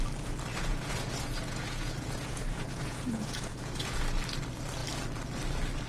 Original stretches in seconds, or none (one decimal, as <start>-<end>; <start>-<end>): 0.0-0.5; 4.0-5.9